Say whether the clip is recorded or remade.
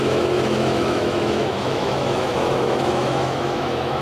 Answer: remade